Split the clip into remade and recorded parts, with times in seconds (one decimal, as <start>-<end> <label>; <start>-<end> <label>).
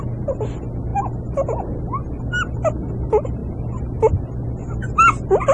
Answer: 0.0-5.5 recorded